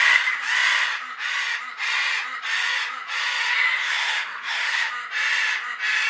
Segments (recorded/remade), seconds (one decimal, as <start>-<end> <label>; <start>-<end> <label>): 0.0-3.8 recorded; 3.8-4.9 remade; 4.9-6.1 recorded